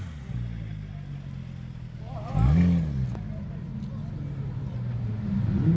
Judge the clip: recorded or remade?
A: recorded